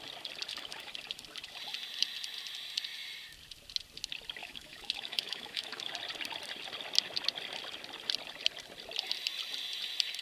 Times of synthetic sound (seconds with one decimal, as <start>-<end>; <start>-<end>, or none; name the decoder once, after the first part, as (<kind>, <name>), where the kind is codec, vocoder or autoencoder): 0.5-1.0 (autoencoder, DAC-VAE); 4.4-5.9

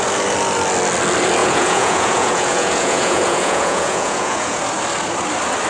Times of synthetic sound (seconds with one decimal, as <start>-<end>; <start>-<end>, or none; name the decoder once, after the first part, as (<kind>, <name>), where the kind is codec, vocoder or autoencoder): 1.4-4.6 (vocoder, Vocos)

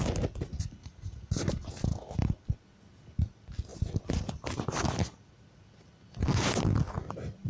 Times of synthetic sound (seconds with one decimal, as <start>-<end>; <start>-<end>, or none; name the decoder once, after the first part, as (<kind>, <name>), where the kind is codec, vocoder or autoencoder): 0.8-1.5 (vocoder, Vocos)